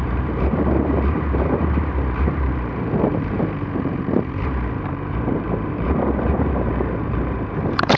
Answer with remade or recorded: remade